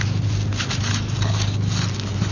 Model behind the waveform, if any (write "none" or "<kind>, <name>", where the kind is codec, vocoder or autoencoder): none